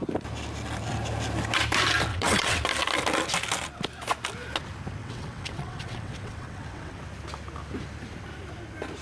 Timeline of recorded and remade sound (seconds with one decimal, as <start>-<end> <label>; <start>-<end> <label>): 0.0-2.1 recorded; 2.1-2.6 remade; 2.6-5.0 recorded; 5.0-7.0 remade; 7.0-9.0 recorded